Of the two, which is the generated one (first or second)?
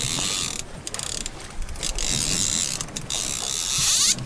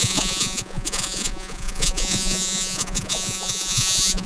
second